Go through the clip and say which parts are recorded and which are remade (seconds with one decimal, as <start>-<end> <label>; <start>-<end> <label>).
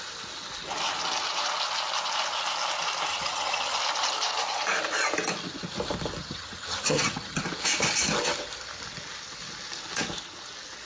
0.0-3.1 recorded; 3.1-3.8 remade; 3.8-6.2 recorded; 6.2-7.4 remade; 7.4-10.9 recorded